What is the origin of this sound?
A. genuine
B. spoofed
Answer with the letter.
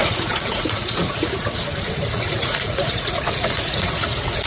B